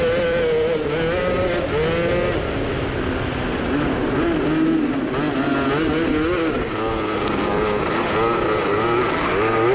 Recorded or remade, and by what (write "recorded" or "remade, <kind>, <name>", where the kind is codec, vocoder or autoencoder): recorded